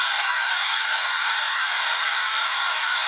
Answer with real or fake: fake